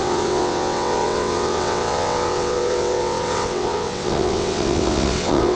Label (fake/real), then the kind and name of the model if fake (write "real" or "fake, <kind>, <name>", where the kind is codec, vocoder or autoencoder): fake, vocoder, WaveNeXt